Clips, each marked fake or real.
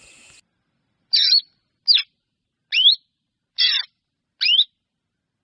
real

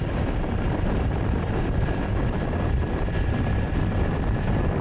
fake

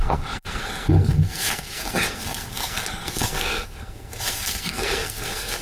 fake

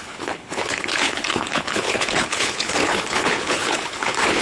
fake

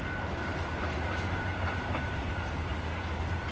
fake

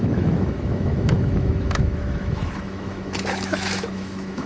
fake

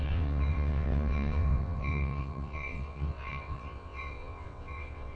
fake